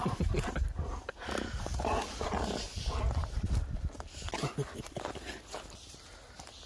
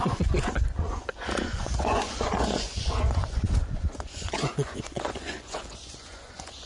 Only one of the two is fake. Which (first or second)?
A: second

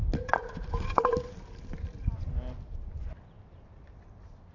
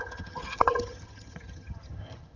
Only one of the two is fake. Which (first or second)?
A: second